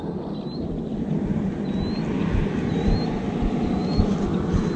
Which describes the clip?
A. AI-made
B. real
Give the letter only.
B